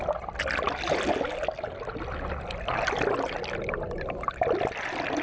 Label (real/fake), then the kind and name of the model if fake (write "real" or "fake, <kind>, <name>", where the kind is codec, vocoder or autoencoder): real